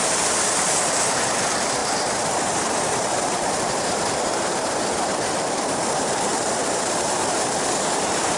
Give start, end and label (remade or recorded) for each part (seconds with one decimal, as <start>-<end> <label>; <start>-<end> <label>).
0.0-8.4 remade